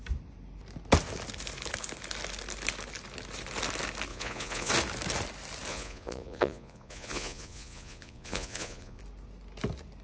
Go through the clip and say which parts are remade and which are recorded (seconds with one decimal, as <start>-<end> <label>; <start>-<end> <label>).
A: 0.0-4.1 recorded; 4.1-4.7 remade; 4.7-5.7 recorded; 5.7-9.0 remade; 9.0-10.0 recorded